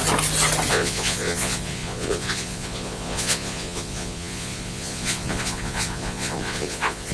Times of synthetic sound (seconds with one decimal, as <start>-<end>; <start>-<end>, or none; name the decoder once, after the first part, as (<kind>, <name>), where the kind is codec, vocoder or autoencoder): 0.7-7.1 (vocoder, Vocos)